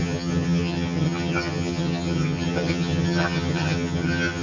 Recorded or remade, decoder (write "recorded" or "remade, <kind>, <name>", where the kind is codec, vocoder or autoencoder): remade, vocoder, HiFi-GAN